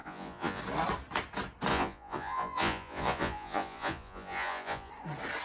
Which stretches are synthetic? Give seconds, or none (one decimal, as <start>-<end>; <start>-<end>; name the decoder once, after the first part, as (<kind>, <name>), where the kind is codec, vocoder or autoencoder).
0.0-0.6 (vocoder, Vocos); 1.7-4.9